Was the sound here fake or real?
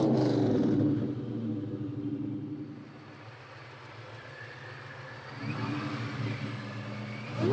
real